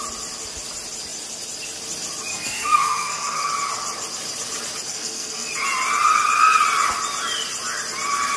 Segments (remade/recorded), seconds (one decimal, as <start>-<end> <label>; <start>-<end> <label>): 0.0-2.3 recorded; 2.3-3.5 remade; 3.5-4.9 recorded; 4.9-5.5 remade; 5.5-8.4 recorded